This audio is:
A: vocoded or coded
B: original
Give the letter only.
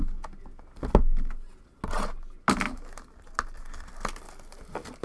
B